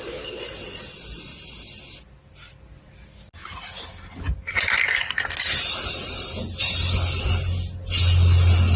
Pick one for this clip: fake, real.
real